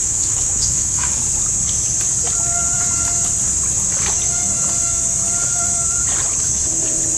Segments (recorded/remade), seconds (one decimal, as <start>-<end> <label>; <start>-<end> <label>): 0.0-1.2 remade; 1.2-7.2 recorded